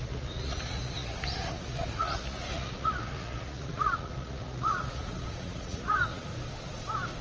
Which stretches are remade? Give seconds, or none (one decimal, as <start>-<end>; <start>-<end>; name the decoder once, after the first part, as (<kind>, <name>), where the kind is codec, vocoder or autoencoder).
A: 0.0-6.3 (vocoder, Vocos)